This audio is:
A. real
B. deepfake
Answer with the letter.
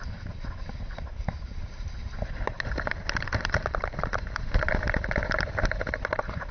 A